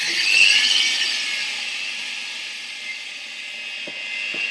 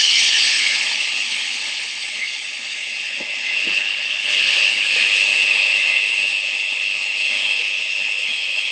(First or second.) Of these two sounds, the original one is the first